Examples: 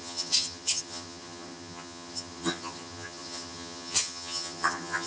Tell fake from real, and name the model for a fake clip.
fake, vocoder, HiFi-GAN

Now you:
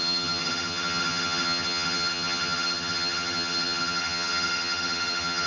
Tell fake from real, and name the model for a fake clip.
fake, vocoder, HiFi-GAN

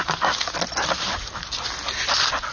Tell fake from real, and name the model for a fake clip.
real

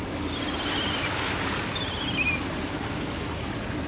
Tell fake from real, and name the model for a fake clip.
real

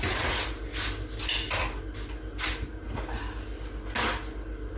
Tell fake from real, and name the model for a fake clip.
real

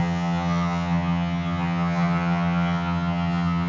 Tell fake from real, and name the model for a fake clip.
fake, vocoder, HiFi-GAN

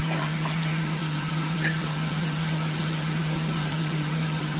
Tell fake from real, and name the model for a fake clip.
fake, vocoder, HiFi-GAN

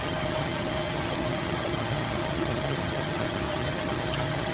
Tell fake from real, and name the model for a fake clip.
fake, vocoder, HiFi-GAN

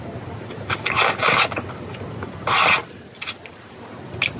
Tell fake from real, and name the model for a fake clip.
real